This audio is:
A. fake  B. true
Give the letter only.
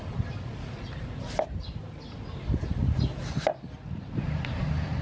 B